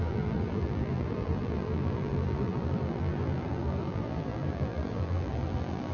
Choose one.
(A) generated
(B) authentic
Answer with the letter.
A